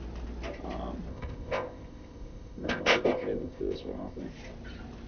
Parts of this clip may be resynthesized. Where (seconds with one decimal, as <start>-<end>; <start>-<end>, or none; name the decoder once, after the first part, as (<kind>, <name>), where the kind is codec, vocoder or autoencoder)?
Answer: 1.1-4.2 (codec, ZipCodec)